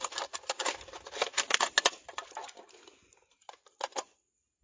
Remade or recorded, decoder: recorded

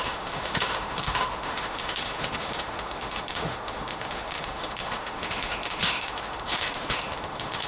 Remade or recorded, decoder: remade, autoencoder, DAC-VAE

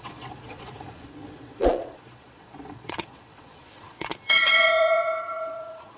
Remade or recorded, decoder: remade, vocoder, Vocos